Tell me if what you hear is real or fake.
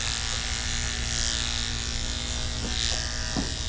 real